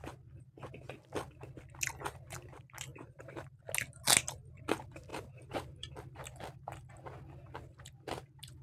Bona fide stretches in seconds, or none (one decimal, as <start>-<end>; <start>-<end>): 0.0-2.9; 3.6-5.1; 5.9-8.6